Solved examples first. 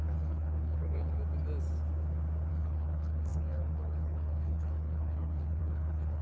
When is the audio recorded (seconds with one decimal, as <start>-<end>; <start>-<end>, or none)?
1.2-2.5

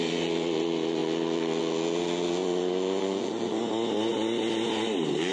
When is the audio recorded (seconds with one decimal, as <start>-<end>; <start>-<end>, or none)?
0.0-5.3

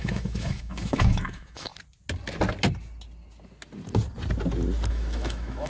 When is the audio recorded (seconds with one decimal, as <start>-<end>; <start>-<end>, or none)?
1.7-4.9